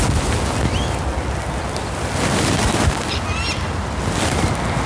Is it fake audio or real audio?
real